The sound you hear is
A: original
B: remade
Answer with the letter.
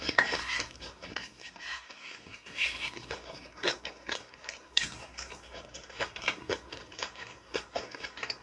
B